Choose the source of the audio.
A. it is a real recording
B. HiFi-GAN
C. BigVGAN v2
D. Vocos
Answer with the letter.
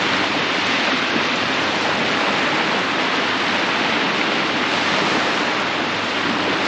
A